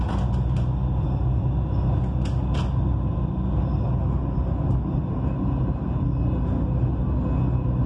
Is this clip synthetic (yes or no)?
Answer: no